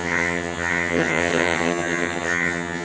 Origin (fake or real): fake